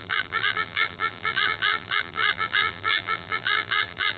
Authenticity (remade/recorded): remade